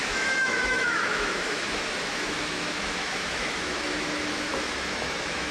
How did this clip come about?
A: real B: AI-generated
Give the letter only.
B